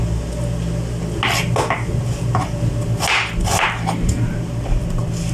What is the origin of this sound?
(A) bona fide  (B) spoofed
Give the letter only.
A